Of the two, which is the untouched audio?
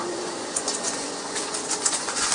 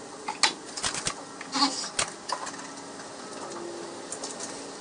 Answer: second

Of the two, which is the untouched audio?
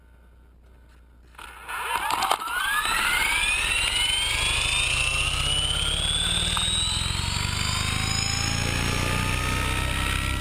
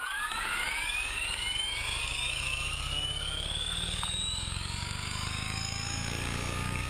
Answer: first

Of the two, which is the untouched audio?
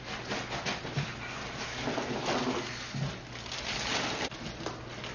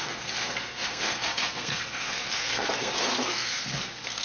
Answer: first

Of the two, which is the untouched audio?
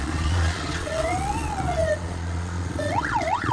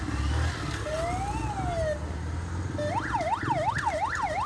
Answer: second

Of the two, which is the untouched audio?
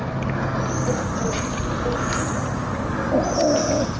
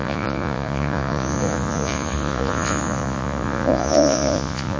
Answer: first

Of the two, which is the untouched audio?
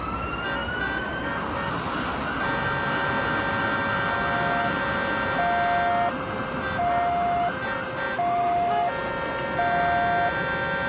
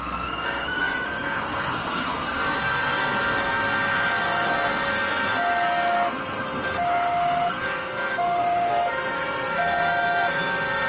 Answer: first